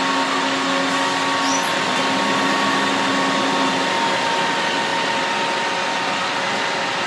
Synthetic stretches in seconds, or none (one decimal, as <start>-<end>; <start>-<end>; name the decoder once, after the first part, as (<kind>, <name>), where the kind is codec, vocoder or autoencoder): none